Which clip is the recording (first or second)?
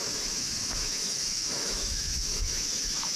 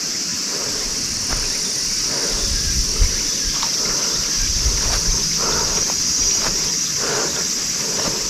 second